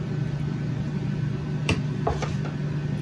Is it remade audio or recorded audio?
recorded